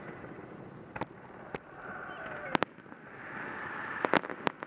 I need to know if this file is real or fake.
real